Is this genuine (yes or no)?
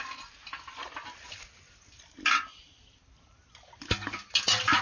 yes